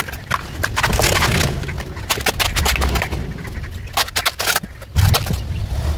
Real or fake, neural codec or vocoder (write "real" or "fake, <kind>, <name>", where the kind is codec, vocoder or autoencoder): real